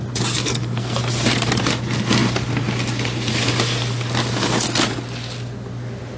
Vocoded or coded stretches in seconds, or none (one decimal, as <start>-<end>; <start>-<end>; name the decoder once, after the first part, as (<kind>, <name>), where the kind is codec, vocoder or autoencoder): 0.4-1.0 (codec, SNAC)